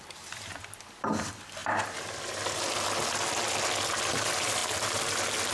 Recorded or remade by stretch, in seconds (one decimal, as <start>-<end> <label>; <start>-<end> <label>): 0.0-1.6 remade; 1.6-4.0 recorded; 4.0-4.6 remade; 4.6-5.5 recorded